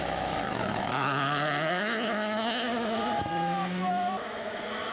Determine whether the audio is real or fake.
fake